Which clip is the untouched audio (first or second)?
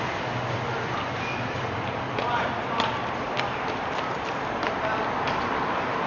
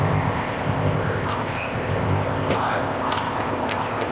first